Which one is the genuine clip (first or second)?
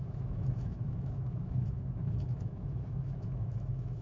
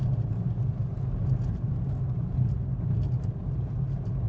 second